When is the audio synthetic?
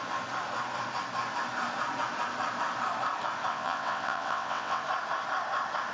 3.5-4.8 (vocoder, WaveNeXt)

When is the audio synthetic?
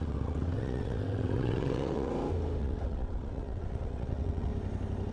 0.0-2.1 (vocoder, WaveNeXt); 2.6-4.5